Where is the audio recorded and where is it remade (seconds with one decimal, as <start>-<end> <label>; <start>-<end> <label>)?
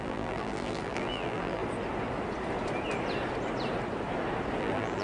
0.0-1.6 remade; 1.6-4.6 recorded; 4.6-5.0 remade